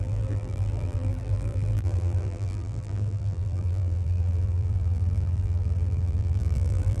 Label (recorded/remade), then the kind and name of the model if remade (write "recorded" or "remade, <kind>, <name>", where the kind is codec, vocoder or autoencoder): remade, vocoder, BigVGAN v2